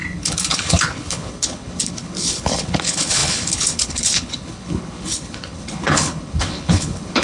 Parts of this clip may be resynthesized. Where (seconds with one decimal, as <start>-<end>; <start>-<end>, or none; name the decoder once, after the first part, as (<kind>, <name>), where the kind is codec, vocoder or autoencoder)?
0.0-7.2 (codec, HILCodec)